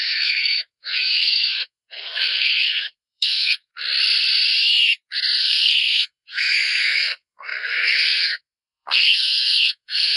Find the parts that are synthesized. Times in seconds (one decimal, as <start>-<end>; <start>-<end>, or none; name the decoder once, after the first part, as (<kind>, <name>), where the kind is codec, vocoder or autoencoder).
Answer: 0.0-3.7 (codec, SNAC); 5.4-10.2